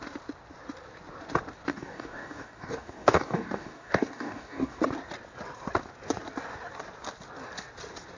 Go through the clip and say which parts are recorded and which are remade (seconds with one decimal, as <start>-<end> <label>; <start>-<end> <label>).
0.0-1.7 recorded; 1.7-4.8 remade; 4.8-8.2 recorded